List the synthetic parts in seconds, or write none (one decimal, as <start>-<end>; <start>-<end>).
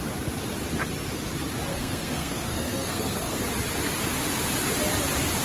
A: 1.7-3.4